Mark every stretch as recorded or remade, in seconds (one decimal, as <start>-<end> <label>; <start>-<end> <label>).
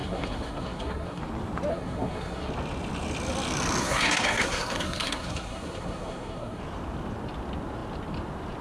0.0-1.2 remade; 1.2-1.7 recorded; 1.7-2.5 remade; 2.5-3.8 recorded; 3.8-6.6 remade; 6.6-8.6 recorded